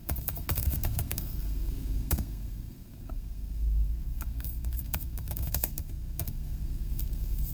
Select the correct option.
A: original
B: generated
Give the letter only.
B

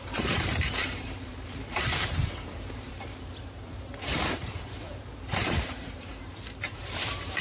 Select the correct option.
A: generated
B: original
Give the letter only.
A